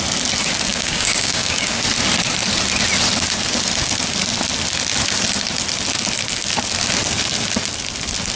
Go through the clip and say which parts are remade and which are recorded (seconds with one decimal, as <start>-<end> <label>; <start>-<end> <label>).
0.0-0.7 recorded; 0.7-1.8 remade; 1.8-8.4 recorded